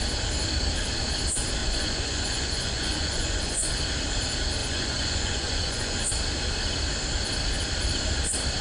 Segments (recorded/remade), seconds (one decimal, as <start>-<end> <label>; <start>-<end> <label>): 0.0-1.6 recorded; 1.6-3.7 remade; 3.7-4.6 recorded; 4.6-6.1 remade; 6.1-8.6 recorded